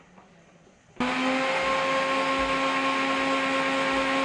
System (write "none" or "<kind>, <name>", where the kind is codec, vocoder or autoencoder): none